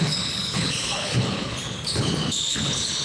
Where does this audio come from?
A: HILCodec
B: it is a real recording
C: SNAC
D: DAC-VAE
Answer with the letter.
A